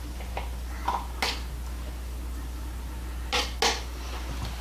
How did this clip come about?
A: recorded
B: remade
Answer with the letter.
A